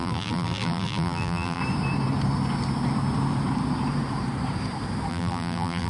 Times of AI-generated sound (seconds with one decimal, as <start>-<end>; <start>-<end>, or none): 0.0-1.6; 5.1-5.9